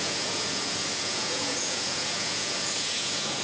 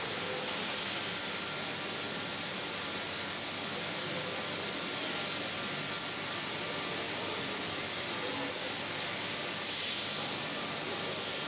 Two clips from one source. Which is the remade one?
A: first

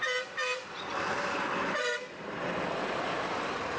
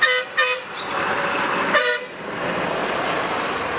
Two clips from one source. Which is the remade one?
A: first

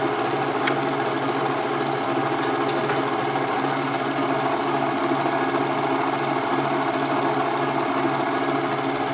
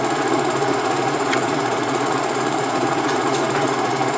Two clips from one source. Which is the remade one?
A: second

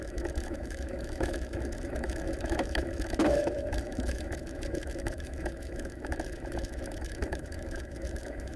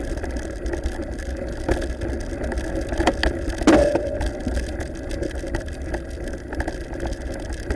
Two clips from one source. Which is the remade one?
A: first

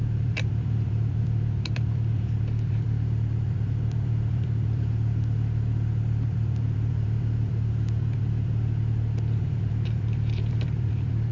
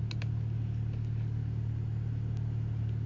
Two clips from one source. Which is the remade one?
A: first